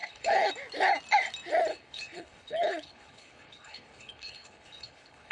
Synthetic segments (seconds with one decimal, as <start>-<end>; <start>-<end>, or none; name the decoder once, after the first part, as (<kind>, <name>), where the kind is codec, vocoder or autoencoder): 0.0-0.5 (codec, HILCodec); 1.7-5.3